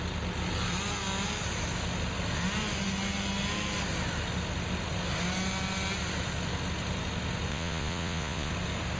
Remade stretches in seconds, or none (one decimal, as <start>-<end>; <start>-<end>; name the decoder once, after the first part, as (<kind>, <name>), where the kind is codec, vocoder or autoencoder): 7.5-8.5 (vocoder, Vocos)